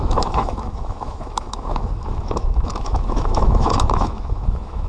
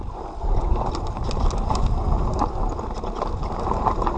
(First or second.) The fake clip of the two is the first